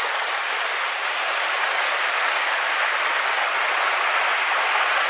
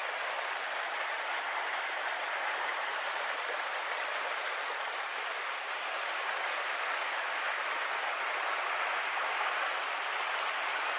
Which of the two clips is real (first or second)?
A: first